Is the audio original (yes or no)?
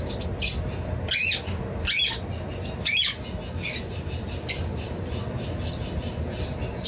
yes